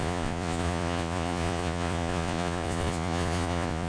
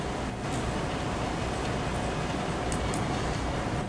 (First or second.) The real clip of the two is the second